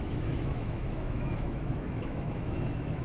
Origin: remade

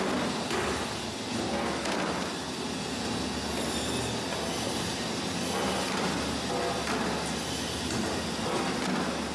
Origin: recorded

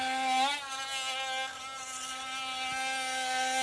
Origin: recorded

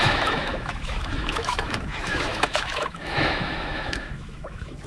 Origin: remade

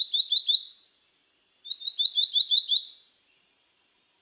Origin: recorded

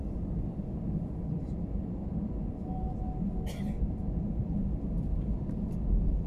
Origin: recorded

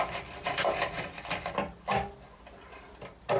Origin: recorded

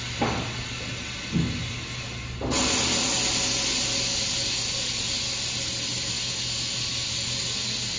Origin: recorded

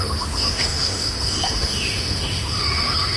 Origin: remade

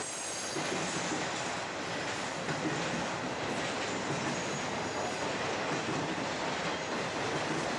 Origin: recorded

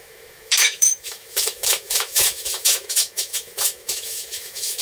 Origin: remade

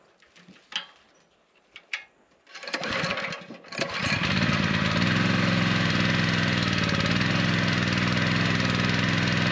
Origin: recorded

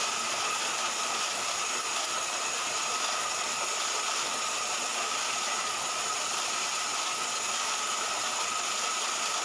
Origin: recorded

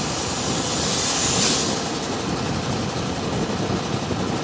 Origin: recorded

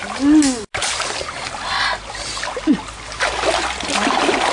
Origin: recorded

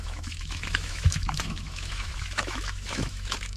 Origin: remade